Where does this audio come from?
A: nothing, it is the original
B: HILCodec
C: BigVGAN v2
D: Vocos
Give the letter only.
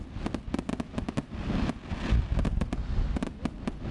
A